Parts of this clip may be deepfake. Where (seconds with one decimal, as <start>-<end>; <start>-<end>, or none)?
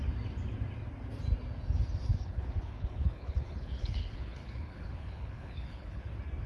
2.1-6.0